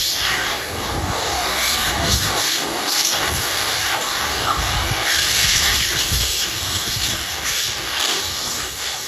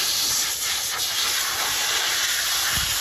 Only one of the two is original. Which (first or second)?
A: second